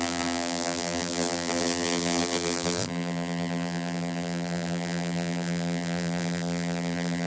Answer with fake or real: fake